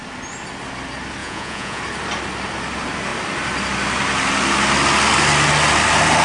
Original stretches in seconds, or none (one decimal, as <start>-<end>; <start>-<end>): 0.0-1.2; 1.8-6.2